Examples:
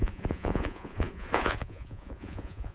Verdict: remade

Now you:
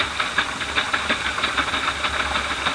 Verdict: recorded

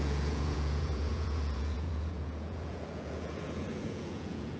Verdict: remade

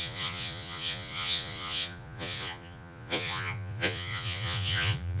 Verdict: remade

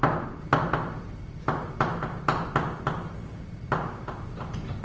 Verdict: recorded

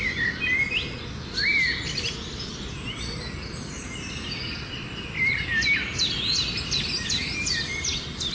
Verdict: recorded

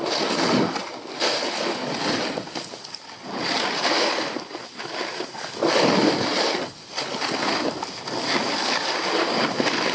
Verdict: recorded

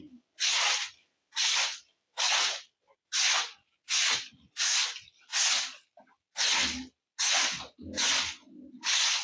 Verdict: recorded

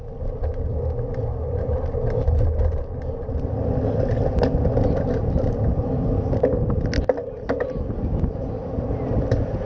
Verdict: recorded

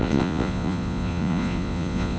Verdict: remade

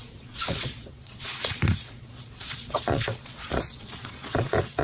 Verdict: remade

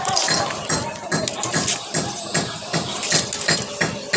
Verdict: recorded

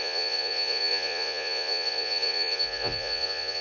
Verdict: remade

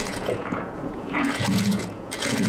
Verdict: remade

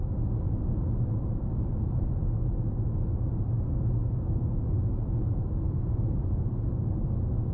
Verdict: recorded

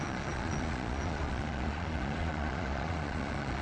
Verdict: remade